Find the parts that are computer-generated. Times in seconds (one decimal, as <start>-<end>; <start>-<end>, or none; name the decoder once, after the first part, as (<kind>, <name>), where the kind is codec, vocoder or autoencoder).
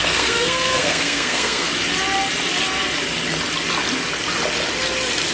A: 0.0-1.7 (codec, SNAC)